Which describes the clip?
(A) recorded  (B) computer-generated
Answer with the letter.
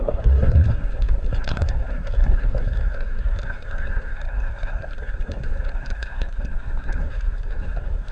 B